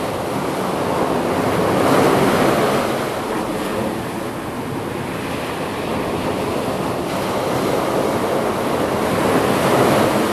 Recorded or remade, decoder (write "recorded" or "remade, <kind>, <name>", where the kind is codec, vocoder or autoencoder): recorded